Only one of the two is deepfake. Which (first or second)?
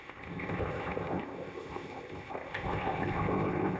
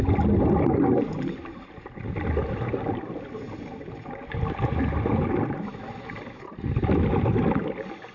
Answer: first